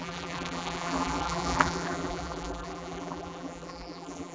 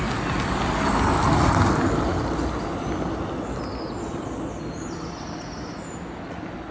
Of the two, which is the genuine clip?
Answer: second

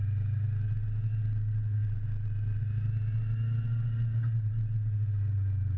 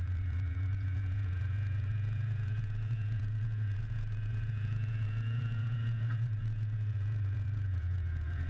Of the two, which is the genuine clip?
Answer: first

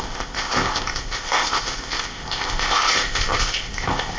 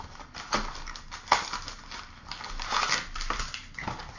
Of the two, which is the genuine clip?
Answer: second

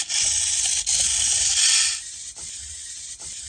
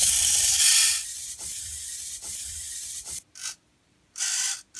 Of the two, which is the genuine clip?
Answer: first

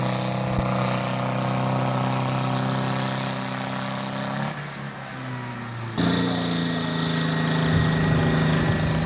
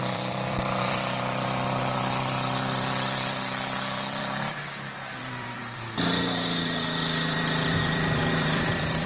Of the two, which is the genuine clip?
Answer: first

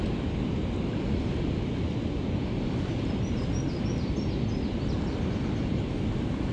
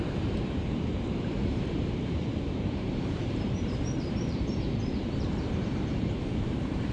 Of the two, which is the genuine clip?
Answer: first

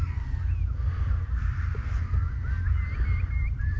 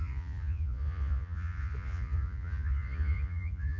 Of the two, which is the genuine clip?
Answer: first